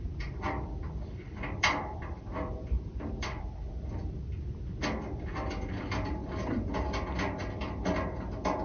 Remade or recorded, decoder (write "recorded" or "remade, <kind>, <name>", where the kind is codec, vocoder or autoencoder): recorded